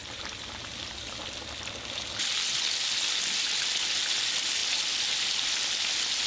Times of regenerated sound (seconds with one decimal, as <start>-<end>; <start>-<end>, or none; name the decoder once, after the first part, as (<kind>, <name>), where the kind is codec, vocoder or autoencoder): none

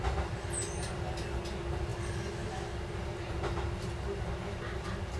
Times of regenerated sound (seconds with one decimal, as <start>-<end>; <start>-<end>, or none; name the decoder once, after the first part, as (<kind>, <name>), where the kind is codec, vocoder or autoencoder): none